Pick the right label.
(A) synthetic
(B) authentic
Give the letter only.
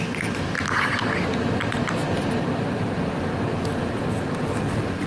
B